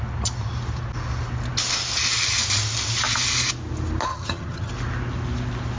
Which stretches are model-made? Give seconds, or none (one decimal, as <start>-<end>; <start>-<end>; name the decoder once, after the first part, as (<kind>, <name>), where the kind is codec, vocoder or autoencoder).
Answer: 4.1-4.7 (vocoder, HiFi-GAN)

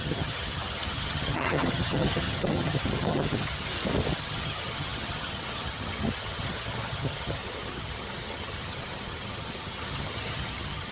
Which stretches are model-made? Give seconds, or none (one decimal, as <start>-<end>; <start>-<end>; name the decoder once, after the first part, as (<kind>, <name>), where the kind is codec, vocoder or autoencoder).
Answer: 0.0-3.7 (vocoder, HiFi-GAN); 4.2-10.9

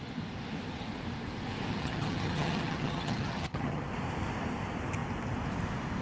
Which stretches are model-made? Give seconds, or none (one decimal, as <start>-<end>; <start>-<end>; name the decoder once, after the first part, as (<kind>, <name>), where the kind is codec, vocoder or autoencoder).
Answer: 1.7-3.8 (vocoder, HiFi-GAN)

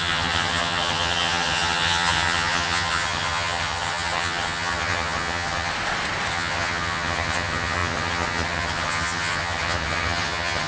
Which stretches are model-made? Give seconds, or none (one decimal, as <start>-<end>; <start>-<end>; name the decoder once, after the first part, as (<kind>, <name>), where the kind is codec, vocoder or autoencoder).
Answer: 0.0-5.7 (vocoder, HiFi-GAN); 6.3-10.7